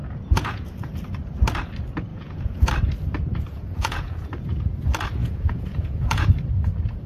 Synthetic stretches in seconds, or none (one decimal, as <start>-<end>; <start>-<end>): 0.0-0.9; 2.1-2.7; 3.5-4.3; 5.2-6.3